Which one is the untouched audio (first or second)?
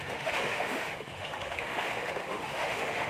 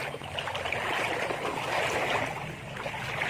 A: second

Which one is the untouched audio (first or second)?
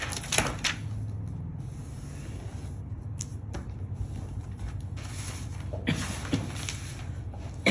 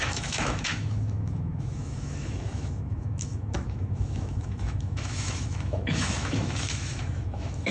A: first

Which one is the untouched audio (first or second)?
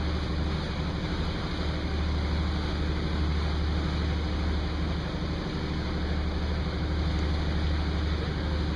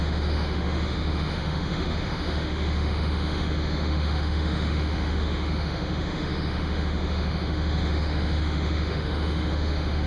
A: first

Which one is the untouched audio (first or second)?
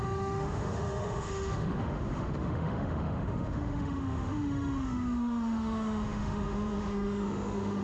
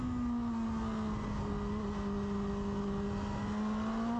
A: second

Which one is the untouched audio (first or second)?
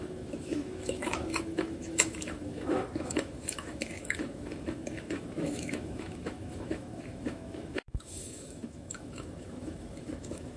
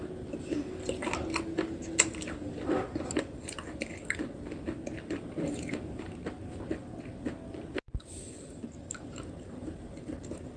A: second